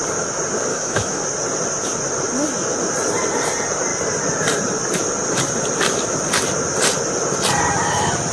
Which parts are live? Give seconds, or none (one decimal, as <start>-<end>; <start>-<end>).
0.0-0.7; 1.2-8.3